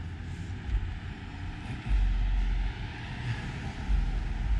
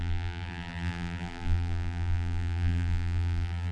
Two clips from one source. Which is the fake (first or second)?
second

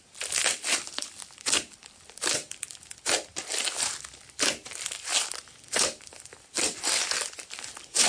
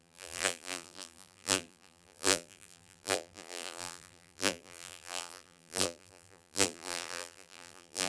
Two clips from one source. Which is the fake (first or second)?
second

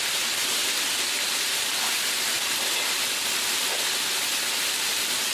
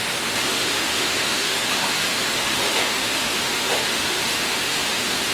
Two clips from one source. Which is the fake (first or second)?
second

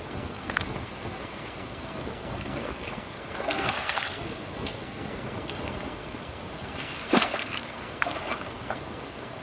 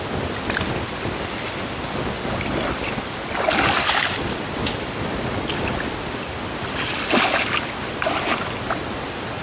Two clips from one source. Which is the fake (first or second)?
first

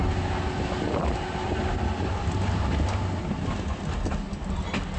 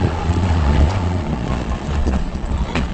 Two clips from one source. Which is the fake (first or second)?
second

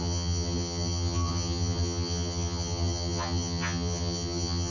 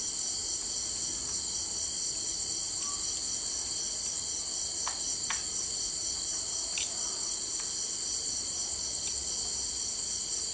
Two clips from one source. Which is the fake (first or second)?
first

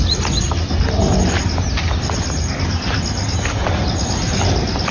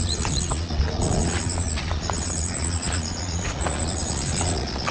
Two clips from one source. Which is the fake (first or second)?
second